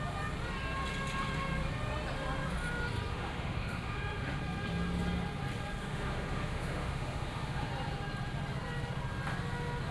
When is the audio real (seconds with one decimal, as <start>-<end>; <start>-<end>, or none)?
0.0-3.1; 4.4-5.8; 7.7-9.9